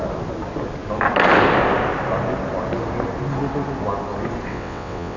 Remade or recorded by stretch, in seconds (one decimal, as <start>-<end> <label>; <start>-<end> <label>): 0.0-4.5 recorded; 4.5-5.2 remade